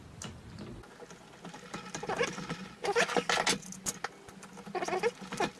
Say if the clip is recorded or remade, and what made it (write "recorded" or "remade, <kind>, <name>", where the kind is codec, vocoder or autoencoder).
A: recorded